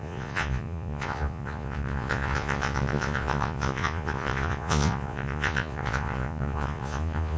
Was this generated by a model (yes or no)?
yes